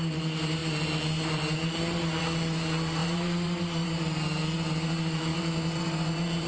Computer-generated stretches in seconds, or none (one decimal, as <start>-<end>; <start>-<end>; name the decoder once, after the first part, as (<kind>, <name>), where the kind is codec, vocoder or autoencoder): 0.0-6.5 (vocoder, BigVGAN v2)